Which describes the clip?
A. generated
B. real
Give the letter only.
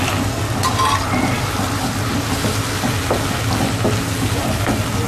B